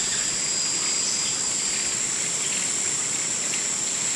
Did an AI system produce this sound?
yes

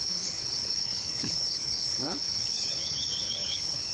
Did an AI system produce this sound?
yes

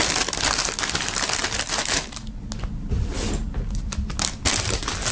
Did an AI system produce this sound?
no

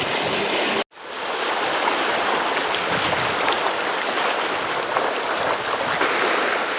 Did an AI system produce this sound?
no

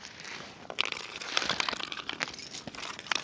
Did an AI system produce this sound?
no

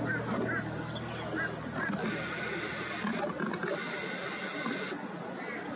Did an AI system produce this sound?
no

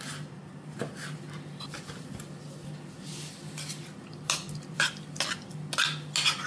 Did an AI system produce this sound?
no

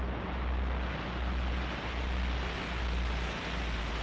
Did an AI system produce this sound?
no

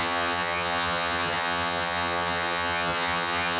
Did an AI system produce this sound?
yes